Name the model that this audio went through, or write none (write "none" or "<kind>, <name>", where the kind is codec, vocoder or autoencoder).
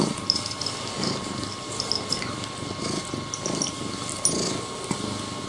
none